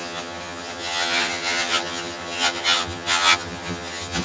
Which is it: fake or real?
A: fake